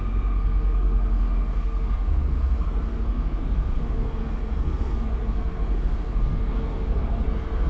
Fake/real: fake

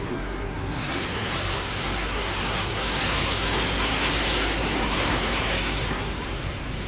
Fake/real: fake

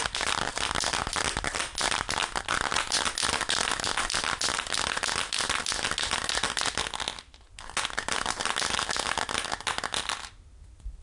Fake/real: real